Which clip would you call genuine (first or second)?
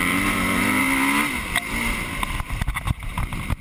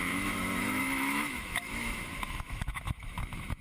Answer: first